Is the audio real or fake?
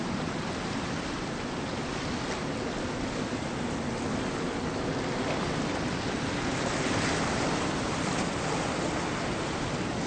real